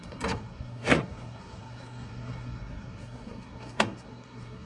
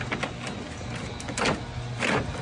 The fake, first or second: first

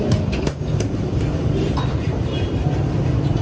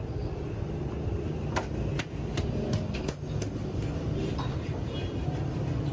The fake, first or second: first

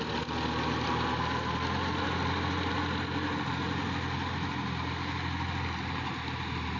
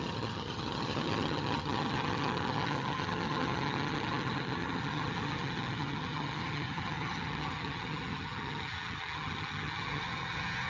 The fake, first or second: second